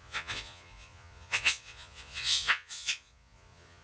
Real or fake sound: fake